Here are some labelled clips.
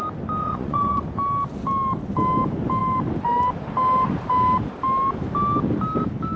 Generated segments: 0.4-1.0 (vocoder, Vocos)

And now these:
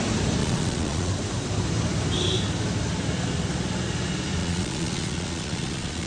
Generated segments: 0.4-1.1 (vocoder, Vocos); 4.4-6.1

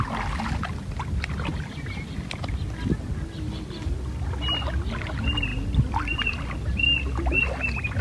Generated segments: none